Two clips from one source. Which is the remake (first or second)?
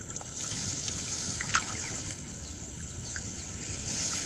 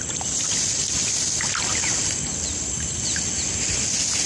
first